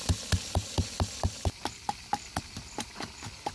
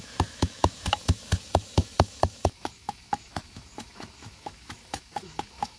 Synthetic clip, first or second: second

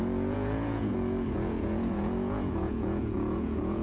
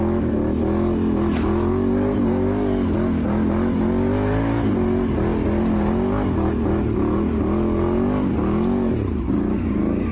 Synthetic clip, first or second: first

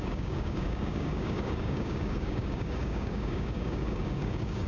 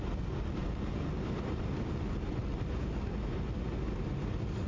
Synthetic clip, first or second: first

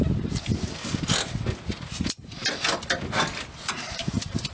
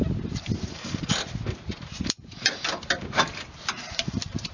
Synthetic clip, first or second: second